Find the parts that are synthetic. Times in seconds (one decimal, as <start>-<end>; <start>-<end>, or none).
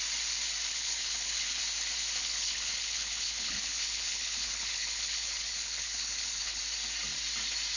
0.7-1.6; 2.2-6.6